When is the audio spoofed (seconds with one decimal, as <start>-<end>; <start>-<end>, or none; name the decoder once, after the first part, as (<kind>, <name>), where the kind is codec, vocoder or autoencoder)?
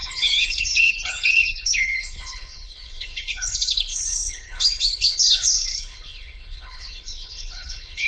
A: 0.0-8.1 (codec, HILCodec)